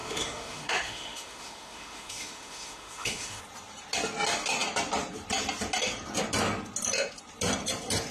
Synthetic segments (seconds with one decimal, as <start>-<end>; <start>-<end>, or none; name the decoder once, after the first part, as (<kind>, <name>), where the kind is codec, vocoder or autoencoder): 0.0-3.4 (autoencoder, DAC-VAE)